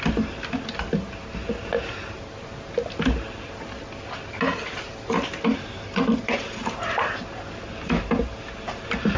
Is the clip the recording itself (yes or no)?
yes